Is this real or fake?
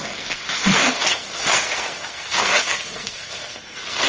fake